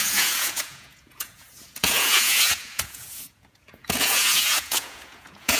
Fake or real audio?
fake